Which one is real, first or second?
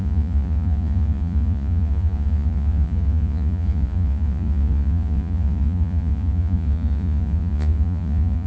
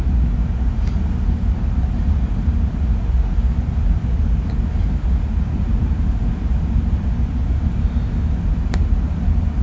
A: second